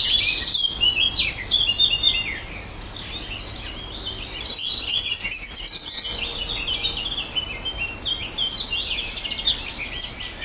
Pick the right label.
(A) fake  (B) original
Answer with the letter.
B